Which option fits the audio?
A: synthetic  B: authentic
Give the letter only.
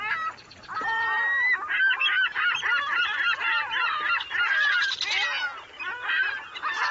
B